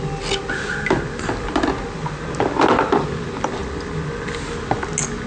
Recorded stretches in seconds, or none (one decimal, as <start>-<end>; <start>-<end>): 0.0-5.3